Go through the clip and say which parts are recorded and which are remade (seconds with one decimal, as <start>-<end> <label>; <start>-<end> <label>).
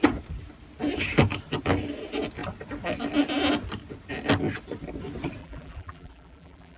0.0-5.4 recorded; 5.4-6.8 remade